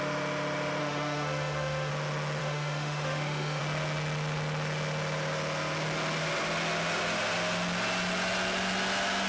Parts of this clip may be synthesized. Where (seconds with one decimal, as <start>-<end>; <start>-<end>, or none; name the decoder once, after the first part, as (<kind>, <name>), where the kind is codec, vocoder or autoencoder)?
0.8-1.9 (autoencoder, DAC-VAE); 2.4-3.6